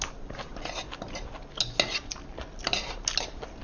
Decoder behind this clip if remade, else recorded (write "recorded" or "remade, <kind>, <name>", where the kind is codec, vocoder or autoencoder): recorded